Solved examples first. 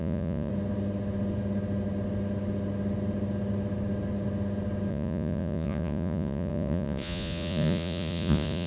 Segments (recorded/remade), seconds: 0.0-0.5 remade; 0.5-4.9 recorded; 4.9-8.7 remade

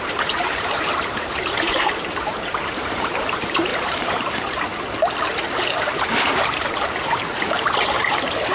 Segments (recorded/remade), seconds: 0.0-4.7 remade; 4.7-5.7 recorded; 5.7-8.5 remade